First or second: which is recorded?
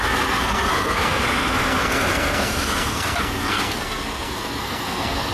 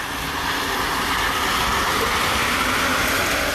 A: second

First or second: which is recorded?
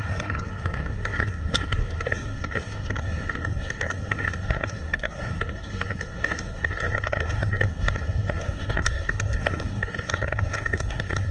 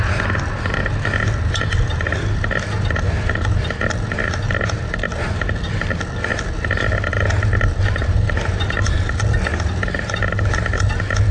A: second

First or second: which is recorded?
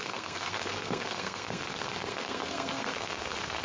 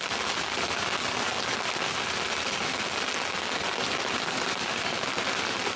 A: second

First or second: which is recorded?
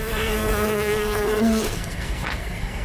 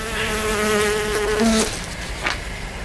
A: second